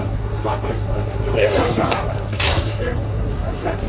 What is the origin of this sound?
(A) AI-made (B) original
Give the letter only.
A